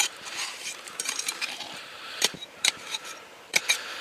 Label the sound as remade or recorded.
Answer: remade